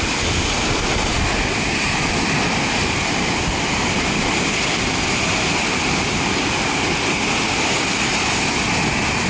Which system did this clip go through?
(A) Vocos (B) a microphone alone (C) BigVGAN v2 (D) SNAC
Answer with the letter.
B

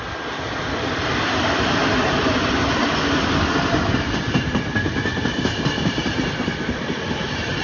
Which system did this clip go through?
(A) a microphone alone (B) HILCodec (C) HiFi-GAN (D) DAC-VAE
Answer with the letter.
A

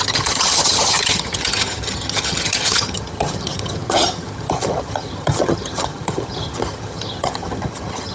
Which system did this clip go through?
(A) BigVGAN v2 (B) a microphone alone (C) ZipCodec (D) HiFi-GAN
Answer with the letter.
D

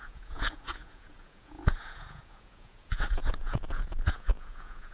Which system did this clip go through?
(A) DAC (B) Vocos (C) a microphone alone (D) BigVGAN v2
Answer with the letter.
B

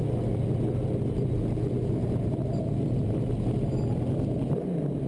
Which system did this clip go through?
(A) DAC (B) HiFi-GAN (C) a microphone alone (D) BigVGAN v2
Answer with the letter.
C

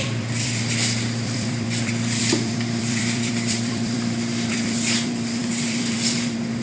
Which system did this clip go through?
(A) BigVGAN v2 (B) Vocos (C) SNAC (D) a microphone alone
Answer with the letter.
A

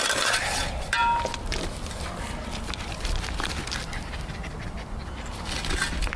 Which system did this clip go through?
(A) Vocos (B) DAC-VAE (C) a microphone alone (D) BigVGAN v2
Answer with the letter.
C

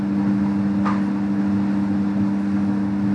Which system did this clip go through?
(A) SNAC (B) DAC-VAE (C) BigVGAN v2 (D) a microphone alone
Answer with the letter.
D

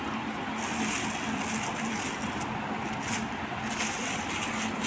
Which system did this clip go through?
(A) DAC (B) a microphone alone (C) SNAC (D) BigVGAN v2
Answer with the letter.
B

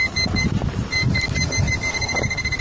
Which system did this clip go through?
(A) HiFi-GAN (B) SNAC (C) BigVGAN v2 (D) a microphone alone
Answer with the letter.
C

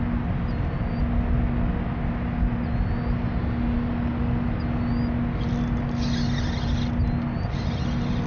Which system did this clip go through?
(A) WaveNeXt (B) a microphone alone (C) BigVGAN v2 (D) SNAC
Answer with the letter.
B